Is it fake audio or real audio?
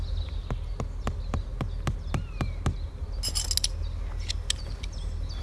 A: real